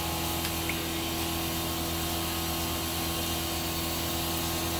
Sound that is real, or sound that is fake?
real